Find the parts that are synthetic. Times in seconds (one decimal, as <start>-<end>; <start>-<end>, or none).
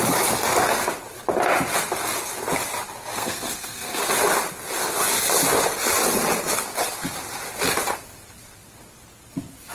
3.1-4.0